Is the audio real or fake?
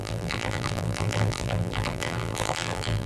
fake